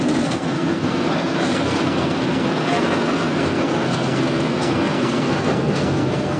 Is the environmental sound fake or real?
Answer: fake